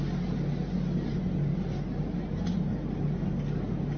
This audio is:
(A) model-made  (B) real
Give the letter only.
B